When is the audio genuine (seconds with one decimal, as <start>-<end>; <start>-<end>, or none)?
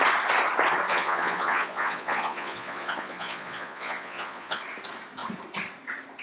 0.0-0.9; 4.6-6.2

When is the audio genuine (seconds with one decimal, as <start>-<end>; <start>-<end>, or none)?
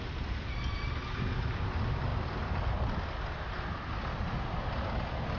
0.0-5.4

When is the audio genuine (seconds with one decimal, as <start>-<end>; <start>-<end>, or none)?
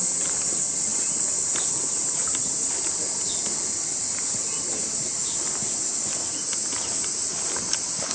0.0-8.1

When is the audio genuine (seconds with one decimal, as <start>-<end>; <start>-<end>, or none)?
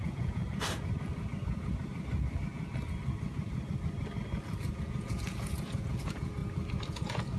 0.4-4.7; 6.4-6.9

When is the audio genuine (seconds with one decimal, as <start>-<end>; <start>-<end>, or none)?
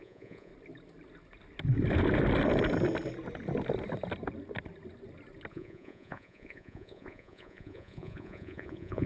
0.5-5.5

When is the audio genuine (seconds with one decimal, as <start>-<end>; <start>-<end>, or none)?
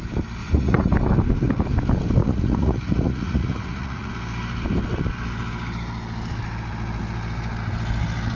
0.0-0.4; 0.9-2.2; 4.1-8.3